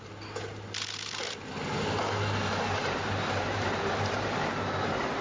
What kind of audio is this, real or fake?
real